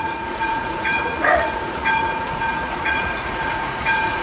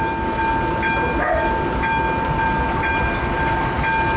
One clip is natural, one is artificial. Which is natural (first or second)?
second